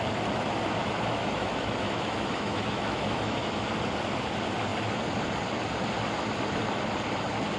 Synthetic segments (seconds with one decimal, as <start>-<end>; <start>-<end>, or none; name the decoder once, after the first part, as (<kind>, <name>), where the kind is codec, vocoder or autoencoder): 0.8-3.7 (autoencoder, DAC-VAE)